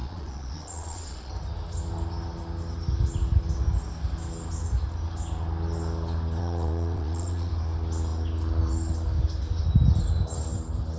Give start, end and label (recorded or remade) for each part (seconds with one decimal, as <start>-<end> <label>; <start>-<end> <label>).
0.0-1.3 remade; 1.3-6.4 recorded; 6.4-7.5 remade; 7.5-11.0 recorded